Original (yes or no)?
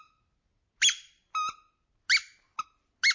yes